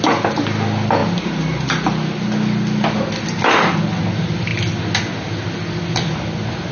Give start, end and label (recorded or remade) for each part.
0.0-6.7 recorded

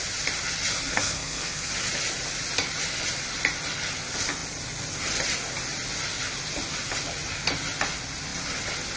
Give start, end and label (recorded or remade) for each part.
0.0-0.9 recorded; 0.9-1.7 remade; 1.7-9.0 recorded